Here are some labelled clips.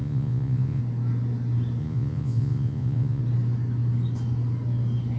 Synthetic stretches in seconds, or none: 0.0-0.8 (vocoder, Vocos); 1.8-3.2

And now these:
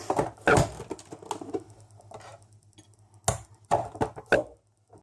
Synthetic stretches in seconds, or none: none

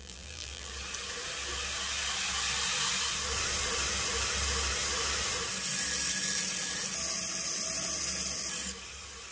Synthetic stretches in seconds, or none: 0.0-0.7 (vocoder, BigVGAN v2)